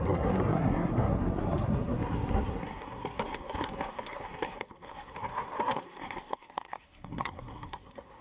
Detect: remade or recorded remade